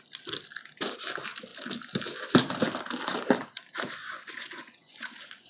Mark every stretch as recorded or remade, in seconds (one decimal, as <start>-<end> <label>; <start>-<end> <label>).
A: 0.0-4.0 recorded; 4.0-5.5 remade